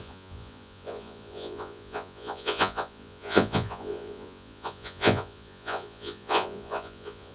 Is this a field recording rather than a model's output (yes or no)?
no